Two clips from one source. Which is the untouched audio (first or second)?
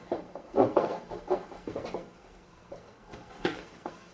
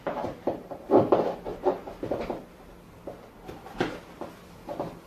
second